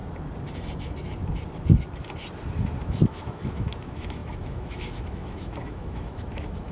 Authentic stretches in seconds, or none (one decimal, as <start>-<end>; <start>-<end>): 0.0-2.8

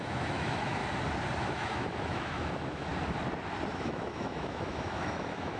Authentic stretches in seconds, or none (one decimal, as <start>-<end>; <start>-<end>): 0.8-1.4; 2.9-3.7

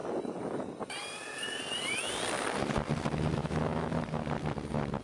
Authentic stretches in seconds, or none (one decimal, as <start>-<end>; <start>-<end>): 0.0-3.4; 4.2-5.0

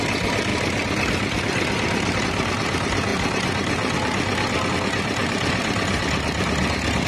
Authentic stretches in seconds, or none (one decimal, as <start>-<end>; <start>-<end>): 0.0-7.1